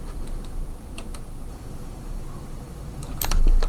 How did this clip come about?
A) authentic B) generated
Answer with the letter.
B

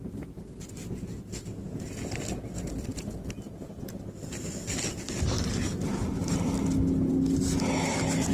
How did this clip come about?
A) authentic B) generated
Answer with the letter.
A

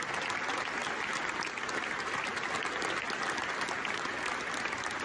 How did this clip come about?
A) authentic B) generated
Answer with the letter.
A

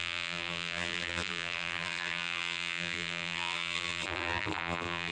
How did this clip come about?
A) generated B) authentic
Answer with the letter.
A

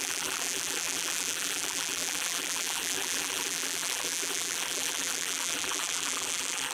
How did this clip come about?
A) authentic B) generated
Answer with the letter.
B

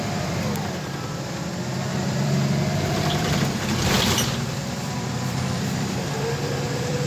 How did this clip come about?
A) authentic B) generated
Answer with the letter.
B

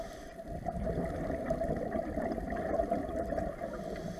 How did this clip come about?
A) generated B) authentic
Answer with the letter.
A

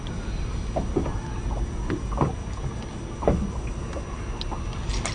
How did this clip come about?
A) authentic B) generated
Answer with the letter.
A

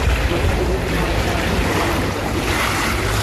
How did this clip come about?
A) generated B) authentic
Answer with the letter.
A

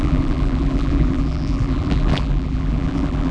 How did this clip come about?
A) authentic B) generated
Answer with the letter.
B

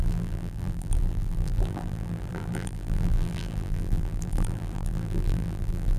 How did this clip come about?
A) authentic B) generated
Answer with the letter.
B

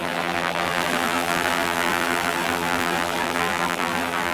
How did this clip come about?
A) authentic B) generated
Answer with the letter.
B